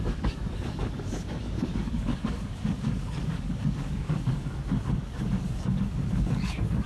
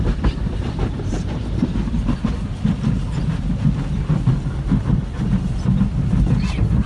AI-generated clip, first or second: first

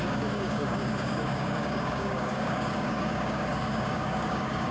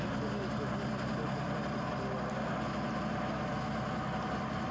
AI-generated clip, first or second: first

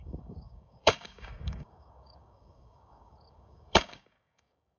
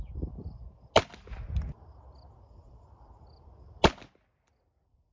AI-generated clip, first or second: first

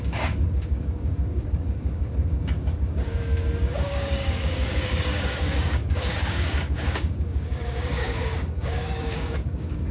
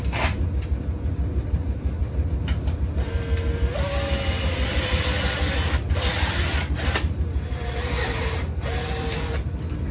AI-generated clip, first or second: first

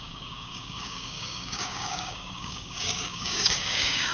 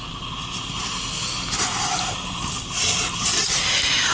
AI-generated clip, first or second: first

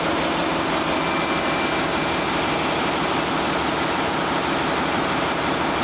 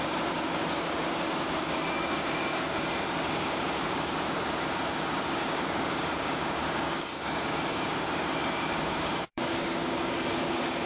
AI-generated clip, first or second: second